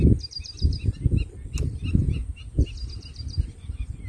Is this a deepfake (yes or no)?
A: no